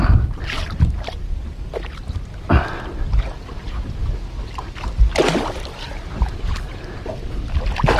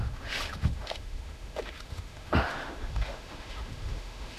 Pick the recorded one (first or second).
first